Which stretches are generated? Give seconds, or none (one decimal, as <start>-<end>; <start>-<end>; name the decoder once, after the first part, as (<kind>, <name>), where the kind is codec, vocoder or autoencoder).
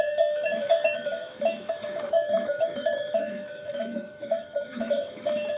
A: 0.0-5.6 (autoencoder, DAC-VAE)